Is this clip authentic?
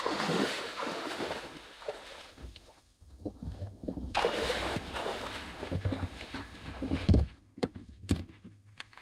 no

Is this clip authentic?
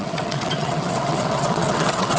no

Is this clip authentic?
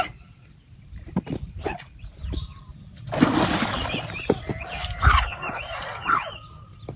yes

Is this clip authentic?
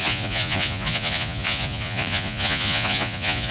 no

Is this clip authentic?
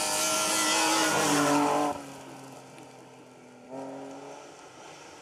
yes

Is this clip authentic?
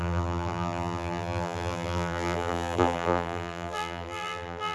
no